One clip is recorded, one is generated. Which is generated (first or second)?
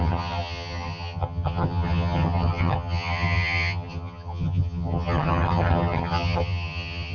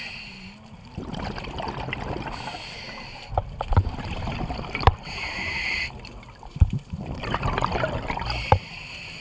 first